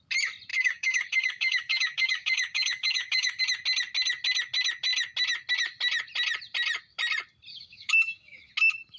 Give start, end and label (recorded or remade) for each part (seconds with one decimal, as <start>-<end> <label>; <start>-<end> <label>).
0.0-0.5 recorded; 0.5-3.4 remade; 3.4-7.5 recorded; 7.5-8.5 remade; 8.5-9.0 recorded